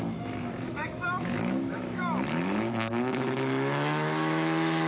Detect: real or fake fake